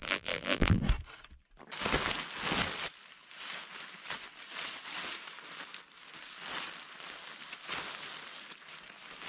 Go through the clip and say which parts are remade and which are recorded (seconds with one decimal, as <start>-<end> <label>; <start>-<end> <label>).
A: 0.0-0.8 remade; 0.8-9.3 recorded